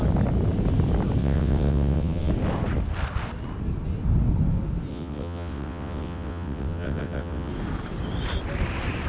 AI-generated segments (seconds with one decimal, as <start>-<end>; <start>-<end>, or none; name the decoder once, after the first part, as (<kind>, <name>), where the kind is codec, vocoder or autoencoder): 1.2-2.3 (vocoder, WaveNeXt); 4.9-7.5